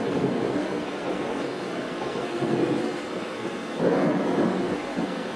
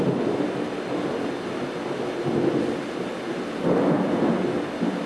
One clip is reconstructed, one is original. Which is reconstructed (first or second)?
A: first